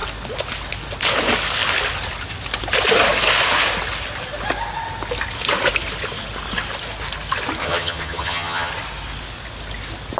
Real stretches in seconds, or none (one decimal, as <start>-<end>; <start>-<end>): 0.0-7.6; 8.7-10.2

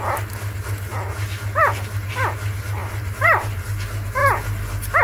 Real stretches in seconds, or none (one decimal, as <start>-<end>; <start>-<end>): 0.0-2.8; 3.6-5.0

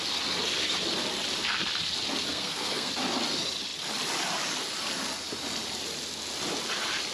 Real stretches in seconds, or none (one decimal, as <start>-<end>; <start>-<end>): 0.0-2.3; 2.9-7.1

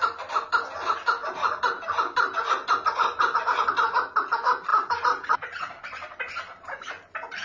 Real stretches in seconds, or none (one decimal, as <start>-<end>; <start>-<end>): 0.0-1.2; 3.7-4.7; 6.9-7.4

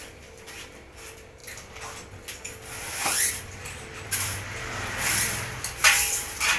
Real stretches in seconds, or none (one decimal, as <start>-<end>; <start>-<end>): 1.4-3.3

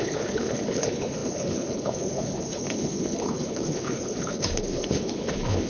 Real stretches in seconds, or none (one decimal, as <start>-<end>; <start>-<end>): none

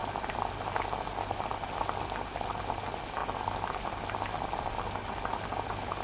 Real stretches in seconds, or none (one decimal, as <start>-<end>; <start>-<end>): 0.0-6.0

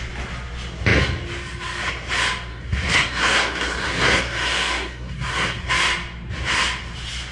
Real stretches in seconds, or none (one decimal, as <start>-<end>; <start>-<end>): 0.0-2.5; 5.7-7.3